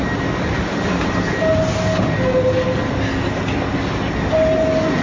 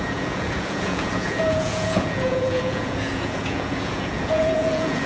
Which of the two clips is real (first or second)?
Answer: first